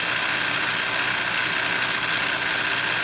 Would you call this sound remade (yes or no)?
no